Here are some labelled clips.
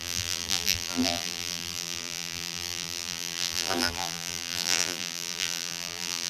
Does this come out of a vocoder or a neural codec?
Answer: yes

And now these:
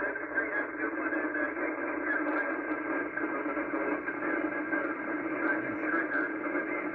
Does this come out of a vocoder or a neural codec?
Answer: no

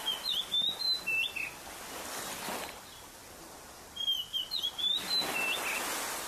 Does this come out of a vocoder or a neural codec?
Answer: no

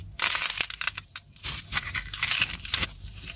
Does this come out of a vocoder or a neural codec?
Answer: yes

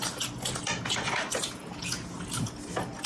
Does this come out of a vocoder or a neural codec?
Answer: no